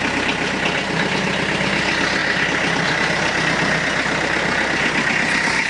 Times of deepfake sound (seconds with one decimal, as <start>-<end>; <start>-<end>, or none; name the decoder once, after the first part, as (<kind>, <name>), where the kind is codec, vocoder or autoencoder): none